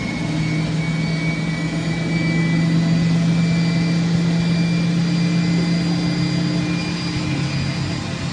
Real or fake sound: real